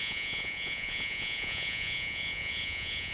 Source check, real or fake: fake